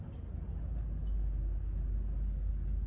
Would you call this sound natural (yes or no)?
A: yes